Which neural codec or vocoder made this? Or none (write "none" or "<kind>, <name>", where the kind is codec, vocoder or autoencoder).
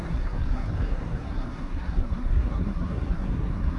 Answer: codec, SNAC